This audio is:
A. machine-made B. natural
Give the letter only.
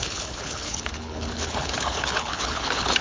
A